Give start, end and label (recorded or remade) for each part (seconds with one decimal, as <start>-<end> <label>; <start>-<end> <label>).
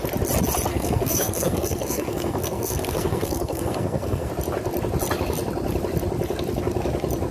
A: 0.0-0.7 recorded; 0.7-4.3 remade; 4.3-7.3 recorded